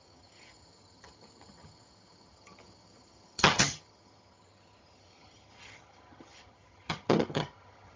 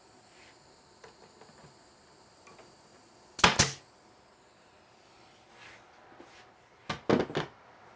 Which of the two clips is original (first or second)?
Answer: second